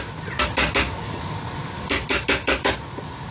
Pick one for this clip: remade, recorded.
recorded